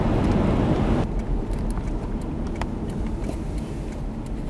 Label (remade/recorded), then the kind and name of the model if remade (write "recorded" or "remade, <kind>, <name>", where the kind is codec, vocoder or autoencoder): recorded